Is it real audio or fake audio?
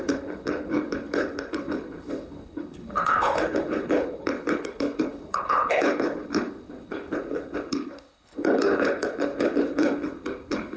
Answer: fake